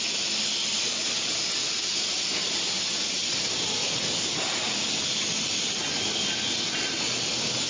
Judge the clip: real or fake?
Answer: real